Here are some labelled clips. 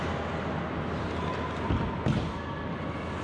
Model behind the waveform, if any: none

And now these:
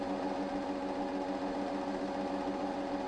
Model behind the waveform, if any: none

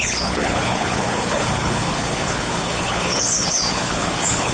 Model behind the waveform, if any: codec, HILCodec